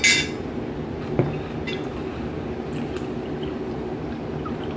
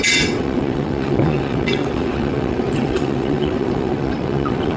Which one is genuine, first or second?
first